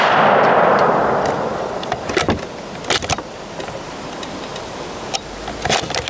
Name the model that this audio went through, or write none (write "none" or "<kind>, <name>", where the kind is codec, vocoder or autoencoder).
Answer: vocoder, BigVGAN v2